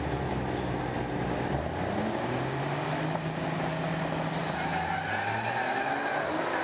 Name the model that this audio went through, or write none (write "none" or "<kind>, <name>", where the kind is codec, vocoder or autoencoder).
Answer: none